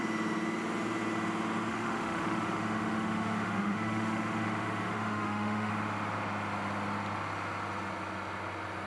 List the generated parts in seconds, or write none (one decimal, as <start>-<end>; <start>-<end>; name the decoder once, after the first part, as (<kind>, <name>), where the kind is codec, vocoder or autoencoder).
1.7-5.7 (autoencoder, DAC-VAE)